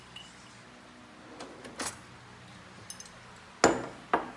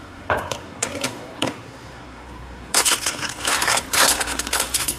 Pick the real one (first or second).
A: first